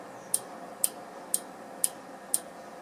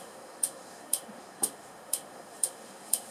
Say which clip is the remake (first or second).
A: second